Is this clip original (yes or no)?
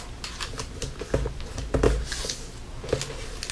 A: yes